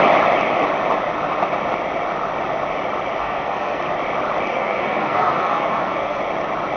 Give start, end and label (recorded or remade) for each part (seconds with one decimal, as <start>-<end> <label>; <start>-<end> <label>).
0.0-3.2 recorded; 3.2-3.8 remade; 3.8-4.5 recorded; 4.5-6.2 remade; 6.2-6.8 recorded